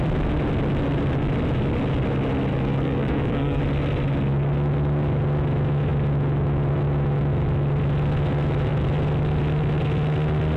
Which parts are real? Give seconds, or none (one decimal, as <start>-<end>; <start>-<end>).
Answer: 0.0-2.5; 3.6-10.6